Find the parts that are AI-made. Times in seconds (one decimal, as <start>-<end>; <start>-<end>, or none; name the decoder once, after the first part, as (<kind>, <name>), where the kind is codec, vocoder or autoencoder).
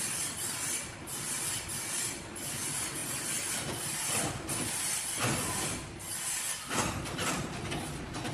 none